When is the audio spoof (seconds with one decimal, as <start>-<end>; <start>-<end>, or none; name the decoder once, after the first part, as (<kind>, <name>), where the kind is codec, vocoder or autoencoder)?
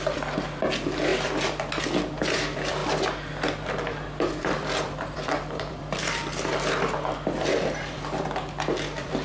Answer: 0.0-2.8 (vocoder, BigVGAN v2); 4.4-6.3; 7.4-9.2